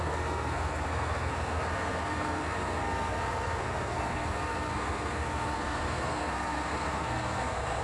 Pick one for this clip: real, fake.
fake